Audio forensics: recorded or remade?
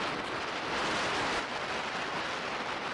recorded